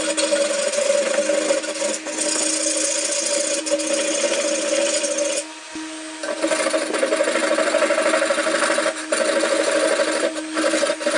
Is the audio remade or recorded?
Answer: recorded